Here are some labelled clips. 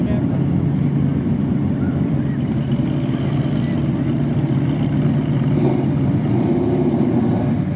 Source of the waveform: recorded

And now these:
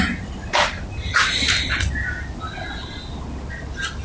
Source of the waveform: recorded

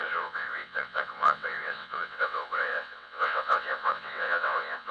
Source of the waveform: remade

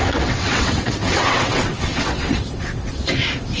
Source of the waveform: remade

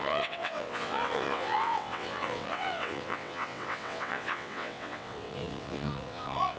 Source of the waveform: remade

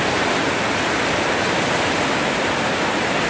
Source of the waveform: recorded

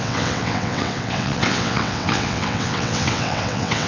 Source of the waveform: remade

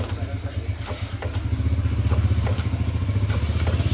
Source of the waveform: recorded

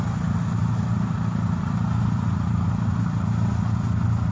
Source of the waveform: recorded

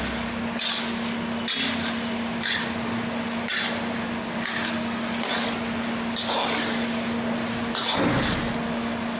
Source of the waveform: recorded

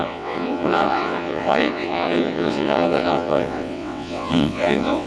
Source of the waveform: remade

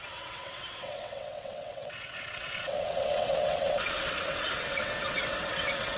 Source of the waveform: remade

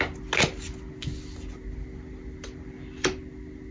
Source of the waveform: recorded